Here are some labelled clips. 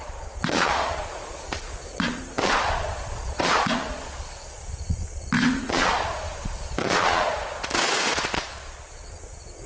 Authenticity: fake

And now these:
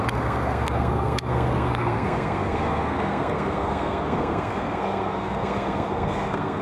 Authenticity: fake